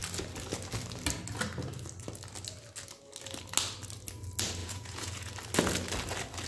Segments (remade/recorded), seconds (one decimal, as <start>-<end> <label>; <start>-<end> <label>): 0.0-4.6 recorded; 4.6-5.3 remade; 5.3-6.5 recorded